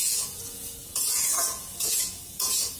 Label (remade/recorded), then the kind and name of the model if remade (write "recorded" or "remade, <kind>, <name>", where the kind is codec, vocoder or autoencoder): remade, vocoder, Vocos